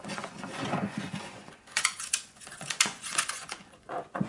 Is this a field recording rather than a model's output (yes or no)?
no